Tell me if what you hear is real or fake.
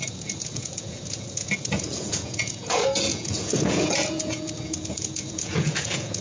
fake